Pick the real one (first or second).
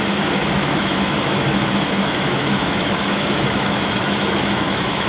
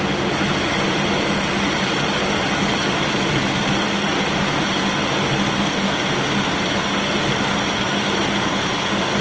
second